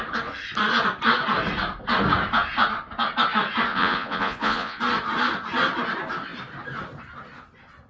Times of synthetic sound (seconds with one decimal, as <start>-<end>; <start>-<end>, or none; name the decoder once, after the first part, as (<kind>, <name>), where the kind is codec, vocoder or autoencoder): 3.7-4.8 (vocoder, Vocos)